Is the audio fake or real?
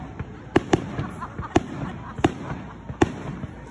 real